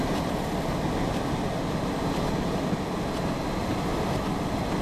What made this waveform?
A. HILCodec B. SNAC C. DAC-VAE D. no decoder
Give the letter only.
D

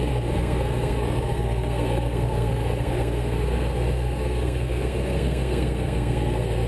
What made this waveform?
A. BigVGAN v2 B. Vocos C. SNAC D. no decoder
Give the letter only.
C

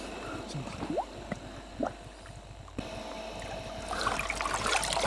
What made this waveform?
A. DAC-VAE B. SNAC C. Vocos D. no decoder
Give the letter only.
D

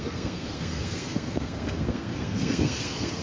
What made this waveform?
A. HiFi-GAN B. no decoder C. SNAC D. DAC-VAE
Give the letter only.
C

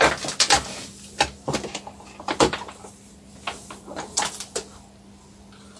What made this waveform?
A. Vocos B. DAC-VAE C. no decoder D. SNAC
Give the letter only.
C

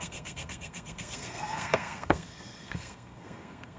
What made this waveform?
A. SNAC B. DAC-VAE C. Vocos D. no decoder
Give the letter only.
A